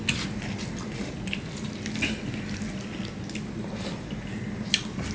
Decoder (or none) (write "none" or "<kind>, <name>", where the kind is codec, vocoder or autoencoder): none